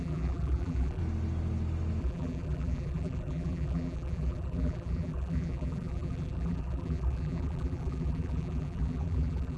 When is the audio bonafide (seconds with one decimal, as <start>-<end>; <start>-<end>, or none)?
1.0-2.0